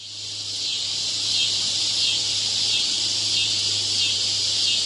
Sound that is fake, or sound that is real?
real